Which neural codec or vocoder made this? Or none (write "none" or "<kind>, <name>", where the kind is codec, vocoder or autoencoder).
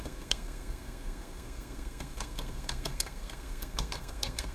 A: codec, SNAC